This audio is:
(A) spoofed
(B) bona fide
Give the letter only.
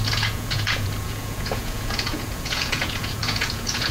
A